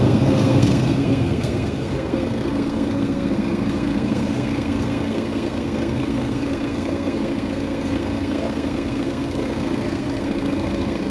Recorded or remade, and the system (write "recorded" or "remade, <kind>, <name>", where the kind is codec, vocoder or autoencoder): remade, codec, SNAC